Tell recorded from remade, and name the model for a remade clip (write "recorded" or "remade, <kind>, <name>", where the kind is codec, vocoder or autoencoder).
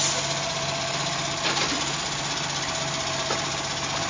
recorded